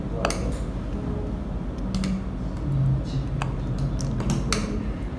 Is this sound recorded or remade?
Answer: recorded